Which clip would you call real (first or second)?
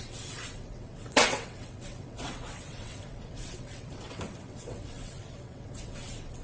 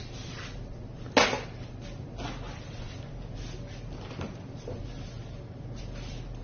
second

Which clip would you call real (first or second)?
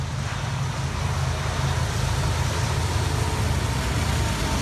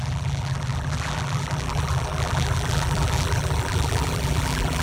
first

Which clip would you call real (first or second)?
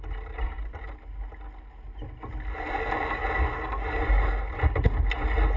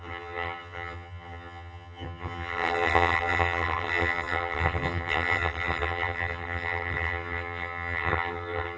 first